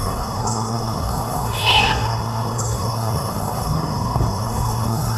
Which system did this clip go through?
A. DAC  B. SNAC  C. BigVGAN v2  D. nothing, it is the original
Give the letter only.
B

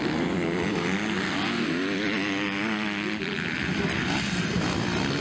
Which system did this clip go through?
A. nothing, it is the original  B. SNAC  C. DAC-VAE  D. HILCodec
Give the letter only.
A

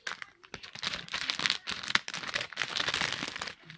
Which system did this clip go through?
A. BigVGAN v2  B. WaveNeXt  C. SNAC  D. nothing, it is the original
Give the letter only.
D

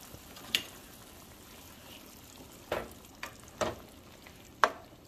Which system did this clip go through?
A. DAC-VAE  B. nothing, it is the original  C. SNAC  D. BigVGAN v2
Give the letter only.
B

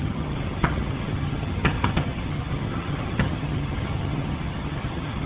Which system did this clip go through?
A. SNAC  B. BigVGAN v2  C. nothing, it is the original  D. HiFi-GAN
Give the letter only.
D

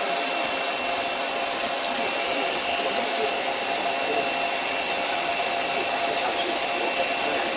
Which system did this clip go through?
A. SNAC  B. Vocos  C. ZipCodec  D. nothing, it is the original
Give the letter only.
D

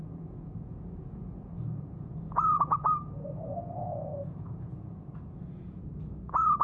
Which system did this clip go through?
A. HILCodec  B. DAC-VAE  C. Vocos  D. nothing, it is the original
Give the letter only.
C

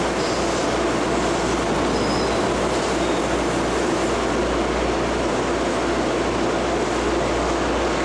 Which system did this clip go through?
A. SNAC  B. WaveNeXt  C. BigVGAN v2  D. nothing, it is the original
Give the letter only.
D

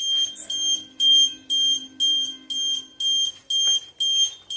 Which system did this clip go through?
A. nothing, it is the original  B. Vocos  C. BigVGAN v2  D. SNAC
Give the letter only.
A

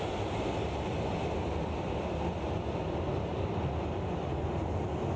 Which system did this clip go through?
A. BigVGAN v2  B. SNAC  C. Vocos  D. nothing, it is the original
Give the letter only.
D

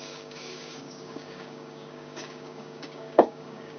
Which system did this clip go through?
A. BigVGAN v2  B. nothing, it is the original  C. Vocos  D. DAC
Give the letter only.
D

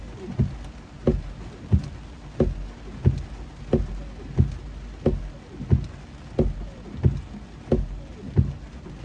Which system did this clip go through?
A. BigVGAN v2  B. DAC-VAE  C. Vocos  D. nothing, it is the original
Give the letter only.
D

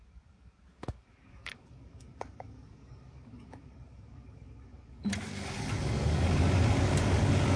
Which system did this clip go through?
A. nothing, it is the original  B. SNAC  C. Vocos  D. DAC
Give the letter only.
D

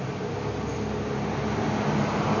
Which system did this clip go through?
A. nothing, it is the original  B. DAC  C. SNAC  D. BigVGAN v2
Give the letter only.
A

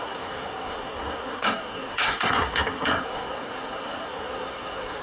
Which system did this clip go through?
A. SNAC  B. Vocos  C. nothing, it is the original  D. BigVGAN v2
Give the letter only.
A